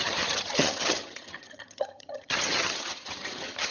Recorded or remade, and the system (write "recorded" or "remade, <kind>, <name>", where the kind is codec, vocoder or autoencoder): remade, vocoder, HiFi-GAN